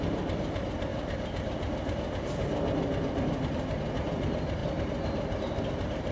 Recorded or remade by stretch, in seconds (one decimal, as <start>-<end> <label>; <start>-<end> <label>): 0.0-6.1 recorded